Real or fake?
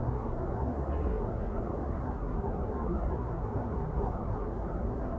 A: fake